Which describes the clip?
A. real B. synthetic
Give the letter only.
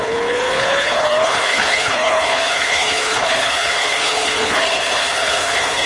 B